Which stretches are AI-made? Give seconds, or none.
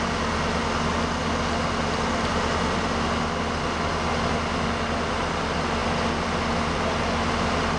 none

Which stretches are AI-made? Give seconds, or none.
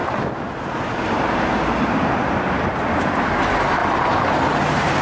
0.0-3.0; 3.8-5.0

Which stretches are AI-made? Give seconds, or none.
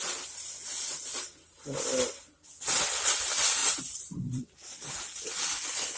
3.6-4.9